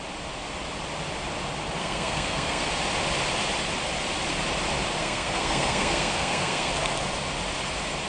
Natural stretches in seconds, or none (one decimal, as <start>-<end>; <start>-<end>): 0.0-1.8; 2.7-5.0; 6.7-8.1